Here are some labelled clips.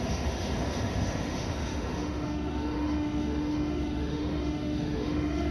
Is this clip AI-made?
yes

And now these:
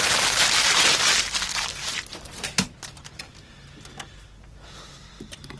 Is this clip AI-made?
no